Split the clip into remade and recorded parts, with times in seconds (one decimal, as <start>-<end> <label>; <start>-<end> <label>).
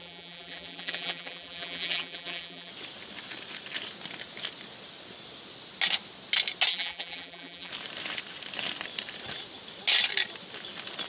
0.0-2.7 remade; 2.7-6.7 recorded; 6.7-7.7 remade; 7.7-11.1 recorded